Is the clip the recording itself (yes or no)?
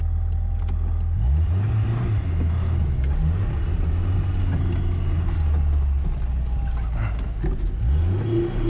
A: yes